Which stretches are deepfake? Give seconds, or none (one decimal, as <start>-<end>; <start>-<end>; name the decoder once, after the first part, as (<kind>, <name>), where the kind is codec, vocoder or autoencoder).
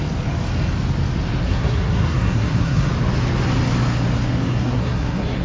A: 1.4-2.9 (codec, SNAC); 4.5-5.4